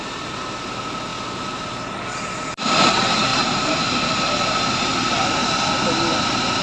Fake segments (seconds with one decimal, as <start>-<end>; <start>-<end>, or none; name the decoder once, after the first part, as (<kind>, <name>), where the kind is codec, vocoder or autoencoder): 3.3-4.2 (vocoder, BigVGAN v2)